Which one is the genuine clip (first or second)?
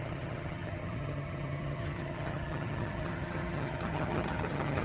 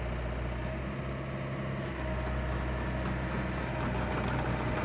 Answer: second